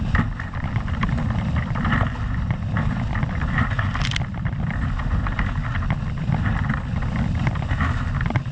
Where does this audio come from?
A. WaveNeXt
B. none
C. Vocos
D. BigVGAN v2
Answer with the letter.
B